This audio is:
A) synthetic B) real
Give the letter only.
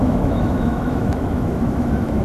A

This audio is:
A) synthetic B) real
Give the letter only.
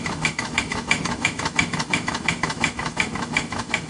A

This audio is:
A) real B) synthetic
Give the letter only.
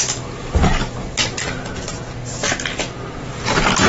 A